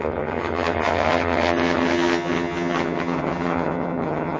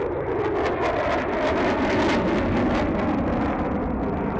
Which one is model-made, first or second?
first